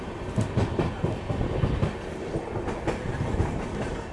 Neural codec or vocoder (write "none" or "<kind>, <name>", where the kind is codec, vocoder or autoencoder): none